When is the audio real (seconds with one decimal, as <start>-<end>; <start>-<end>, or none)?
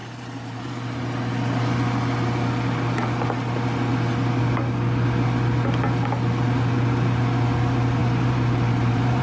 0.7-8.0